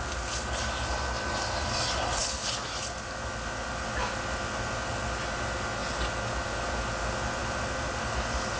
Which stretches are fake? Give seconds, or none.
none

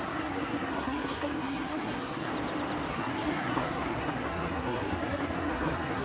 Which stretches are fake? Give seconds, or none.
0.0-2.3 (codec, SNAC); 2.9-6.0